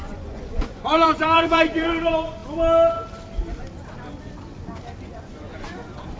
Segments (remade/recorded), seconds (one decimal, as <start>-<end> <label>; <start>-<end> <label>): 0.0-2.4 remade; 2.4-5.0 recorded; 5.0-6.2 remade